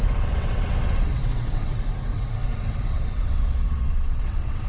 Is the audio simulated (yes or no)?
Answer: yes